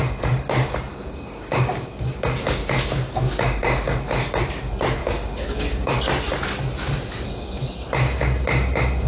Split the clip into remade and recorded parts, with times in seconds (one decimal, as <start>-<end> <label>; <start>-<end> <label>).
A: 0.0-0.9 recorded; 0.9-4.4 remade; 4.4-5.0 recorded; 5.0-6.0 remade; 6.0-9.1 recorded